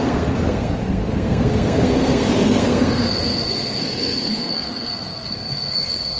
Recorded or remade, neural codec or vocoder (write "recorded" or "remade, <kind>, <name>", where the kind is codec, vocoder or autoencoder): remade, codec, SNAC